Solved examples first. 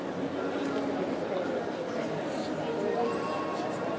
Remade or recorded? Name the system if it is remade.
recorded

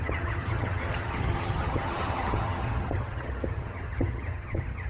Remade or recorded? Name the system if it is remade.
remade, vocoder, HiFi-GAN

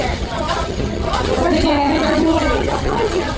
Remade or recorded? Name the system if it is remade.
remade, vocoder, HiFi-GAN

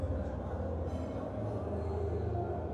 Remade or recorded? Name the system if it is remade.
recorded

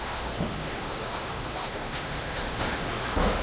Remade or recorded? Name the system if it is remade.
remade, autoencoder, DAC-VAE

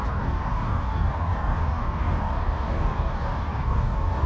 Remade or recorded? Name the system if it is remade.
remade, codec, DAC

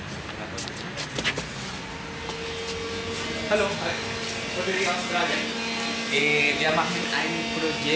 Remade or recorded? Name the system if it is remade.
recorded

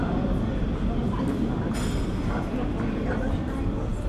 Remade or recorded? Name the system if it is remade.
recorded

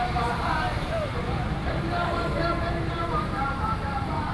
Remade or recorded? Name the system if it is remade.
remade, vocoder, BigVGAN v2